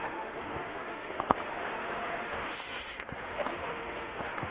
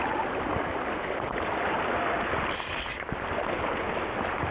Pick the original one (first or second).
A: second